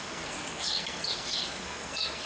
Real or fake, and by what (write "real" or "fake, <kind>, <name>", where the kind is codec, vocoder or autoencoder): fake, codec, SNAC